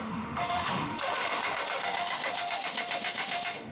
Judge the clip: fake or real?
fake